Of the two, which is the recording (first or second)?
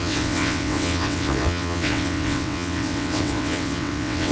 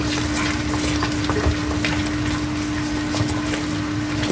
second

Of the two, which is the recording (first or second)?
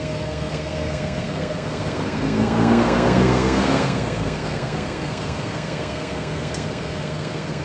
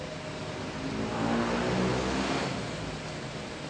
second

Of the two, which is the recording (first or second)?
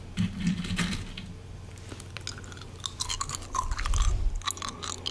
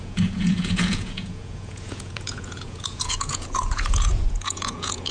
first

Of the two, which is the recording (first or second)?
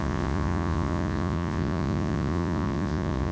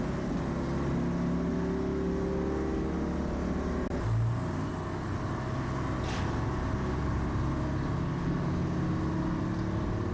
second